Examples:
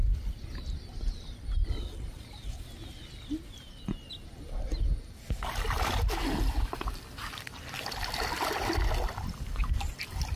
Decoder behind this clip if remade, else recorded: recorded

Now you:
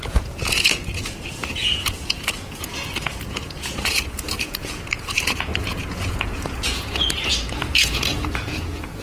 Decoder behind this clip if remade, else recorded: remade, vocoder, Vocos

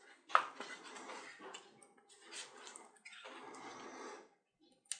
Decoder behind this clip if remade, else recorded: recorded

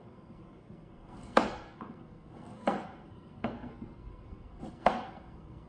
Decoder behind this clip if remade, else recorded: remade, codec, SNAC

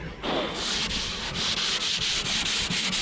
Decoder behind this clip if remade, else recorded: recorded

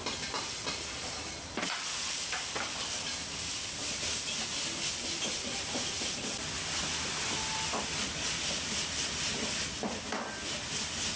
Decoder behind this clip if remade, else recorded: recorded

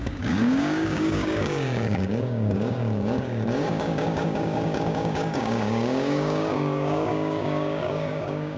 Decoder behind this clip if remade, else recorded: remade, codec, DAC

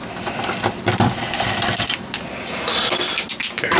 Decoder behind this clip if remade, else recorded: recorded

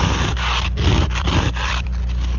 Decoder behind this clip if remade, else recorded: remade, vocoder, BigVGAN v2